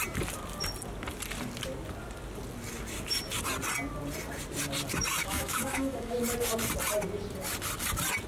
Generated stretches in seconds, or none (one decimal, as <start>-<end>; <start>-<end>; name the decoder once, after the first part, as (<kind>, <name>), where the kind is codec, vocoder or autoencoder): 5.2-6.2 (autoencoder, DAC-VAE)